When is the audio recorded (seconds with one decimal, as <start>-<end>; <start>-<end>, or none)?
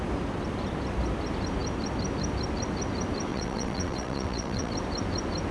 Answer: 0.0-3.3; 4.7-5.5